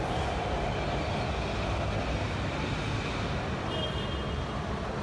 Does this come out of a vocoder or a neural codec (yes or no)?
no